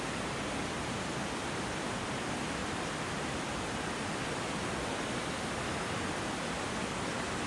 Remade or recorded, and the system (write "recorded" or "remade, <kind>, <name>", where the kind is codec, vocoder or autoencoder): recorded